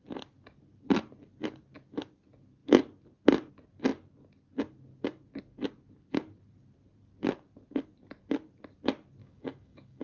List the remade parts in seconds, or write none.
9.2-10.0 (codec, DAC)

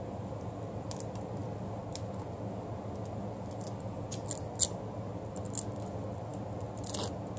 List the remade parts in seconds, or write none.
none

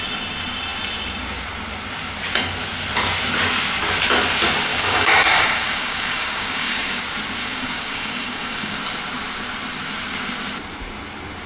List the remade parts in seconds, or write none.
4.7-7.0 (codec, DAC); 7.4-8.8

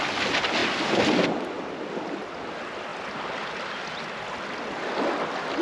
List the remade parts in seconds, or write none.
0.6-1.3 (vocoder, BigVGAN v2); 2.9-3.7

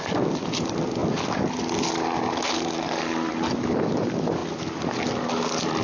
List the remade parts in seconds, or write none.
none

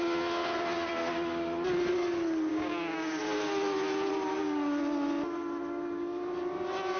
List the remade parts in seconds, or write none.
2.5-3.2 (codec, DAC)

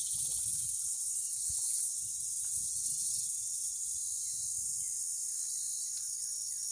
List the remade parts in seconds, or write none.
0.0-3.9 (vocoder, WaveNeXt)